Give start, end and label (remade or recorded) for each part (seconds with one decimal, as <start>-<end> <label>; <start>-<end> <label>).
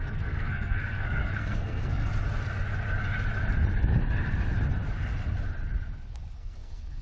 0.0-2.1 remade; 2.1-6.3 recorded; 6.3-7.0 remade